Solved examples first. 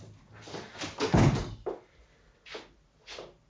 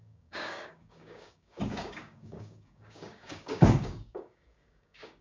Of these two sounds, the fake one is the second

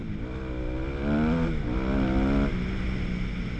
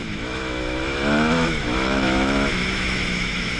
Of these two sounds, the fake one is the second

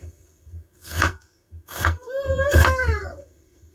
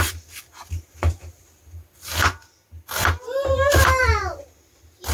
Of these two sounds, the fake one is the first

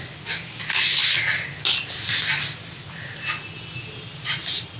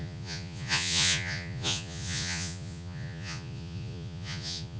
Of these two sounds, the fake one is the second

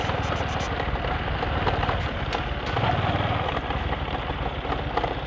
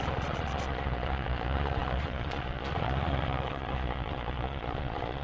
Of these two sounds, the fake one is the second